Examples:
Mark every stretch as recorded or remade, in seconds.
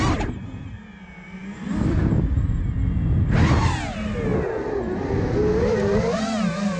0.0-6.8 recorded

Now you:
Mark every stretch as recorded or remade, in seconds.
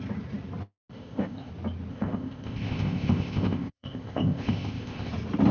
0.0-0.9 recorded; 0.9-1.5 remade; 1.5-1.9 recorded; 1.9-5.1 remade; 5.1-5.5 recorded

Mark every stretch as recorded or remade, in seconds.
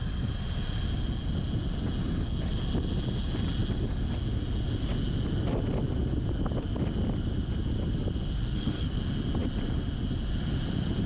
0.0-8.4 recorded; 8.4-9.0 remade; 9.0-11.1 recorded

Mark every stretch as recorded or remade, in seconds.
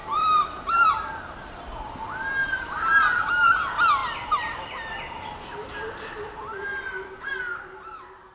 0.0-0.9 remade; 0.9-2.4 recorded; 2.4-3.3 remade; 3.3-6.7 recorded; 6.7-7.3 remade; 7.3-8.3 recorded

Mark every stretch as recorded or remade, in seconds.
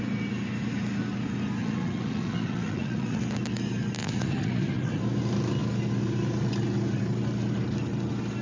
0.0-1.6 recorded; 1.6-3.2 remade; 3.2-4.0 recorded; 4.0-5.0 remade; 5.0-8.4 recorded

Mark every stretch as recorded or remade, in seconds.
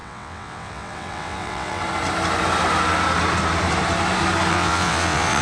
0.0-1.8 remade; 1.8-4.5 recorded; 4.5-5.4 remade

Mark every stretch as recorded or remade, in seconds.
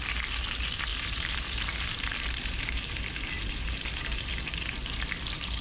0.0-0.9 recorded; 0.9-4.3 remade; 4.3-5.6 recorded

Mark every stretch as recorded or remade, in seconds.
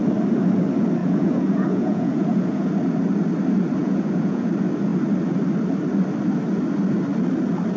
0.0-1.0 recorded; 1.0-2.7 remade; 2.7-3.8 recorded; 3.8-4.5 remade; 4.5-7.8 recorded